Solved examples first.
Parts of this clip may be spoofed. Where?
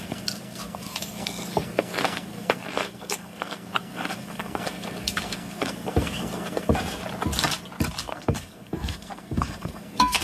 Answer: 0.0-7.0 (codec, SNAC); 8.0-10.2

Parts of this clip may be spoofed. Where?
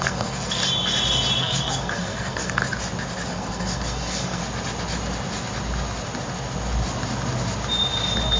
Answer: 0.0-0.6 (codec, SNAC); 1.4-2.6; 3.3-4.4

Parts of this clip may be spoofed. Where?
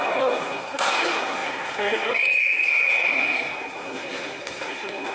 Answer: 0.0-5.1 (codec, SNAC)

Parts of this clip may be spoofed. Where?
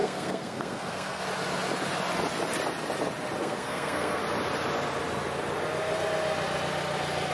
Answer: 0.0-1.2 (codec, SNAC); 3.4-4.2